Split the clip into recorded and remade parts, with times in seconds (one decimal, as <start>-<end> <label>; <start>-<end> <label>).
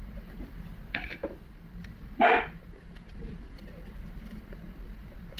0.0-1.2 recorded; 1.2-4.4 remade; 4.4-5.4 recorded